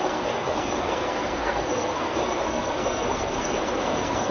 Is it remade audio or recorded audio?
remade